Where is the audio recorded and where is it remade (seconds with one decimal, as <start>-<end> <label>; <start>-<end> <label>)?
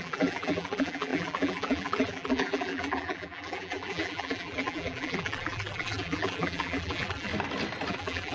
0.0-7.3 remade; 7.3-7.9 recorded; 7.9-8.3 remade